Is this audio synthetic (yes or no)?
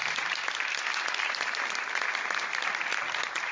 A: no